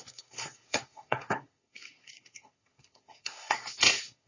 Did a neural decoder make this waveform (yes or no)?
yes